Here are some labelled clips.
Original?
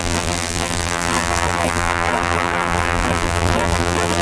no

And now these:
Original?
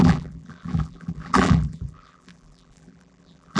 no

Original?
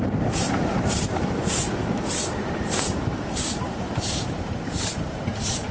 no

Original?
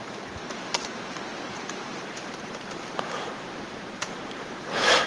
no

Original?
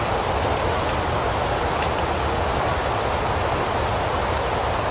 yes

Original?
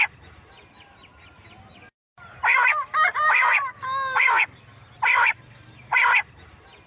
yes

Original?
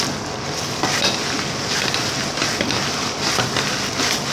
yes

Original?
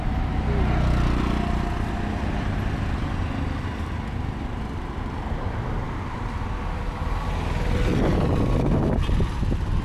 yes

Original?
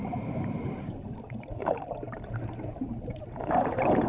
no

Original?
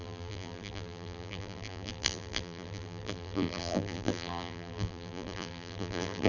no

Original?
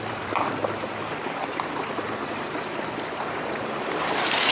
no